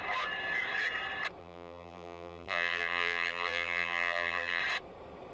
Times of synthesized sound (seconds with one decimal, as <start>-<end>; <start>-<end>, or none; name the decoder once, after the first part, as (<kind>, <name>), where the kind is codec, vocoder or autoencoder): 1.4-4.6 (vocoder, BigVGAN v2)